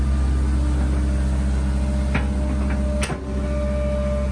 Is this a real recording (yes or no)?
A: yes